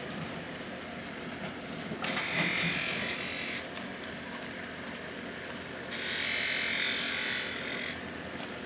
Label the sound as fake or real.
real